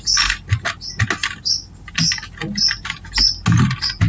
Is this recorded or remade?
recorded